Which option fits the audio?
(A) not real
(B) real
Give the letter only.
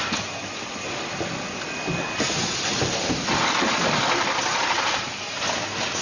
B